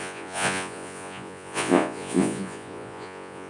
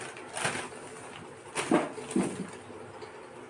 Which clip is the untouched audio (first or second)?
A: second